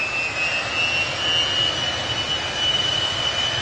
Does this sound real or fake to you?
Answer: real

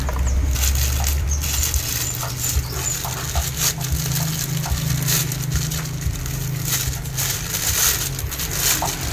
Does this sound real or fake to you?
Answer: real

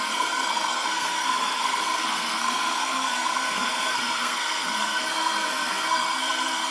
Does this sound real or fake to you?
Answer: fake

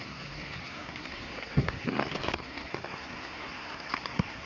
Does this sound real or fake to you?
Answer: fake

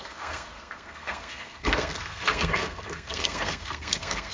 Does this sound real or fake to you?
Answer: fake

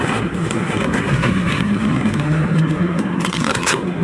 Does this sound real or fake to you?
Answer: fake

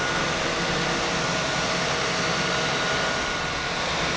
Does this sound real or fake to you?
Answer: real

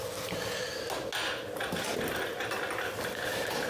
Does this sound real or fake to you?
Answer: real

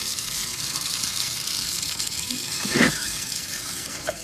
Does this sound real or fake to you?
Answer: fake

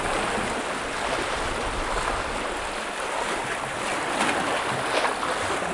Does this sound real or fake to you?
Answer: real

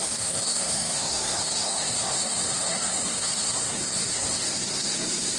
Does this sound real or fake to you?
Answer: fake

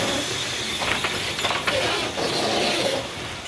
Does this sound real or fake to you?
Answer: real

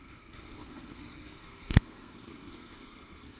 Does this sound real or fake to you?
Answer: fake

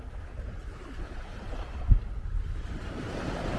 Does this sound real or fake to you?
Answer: real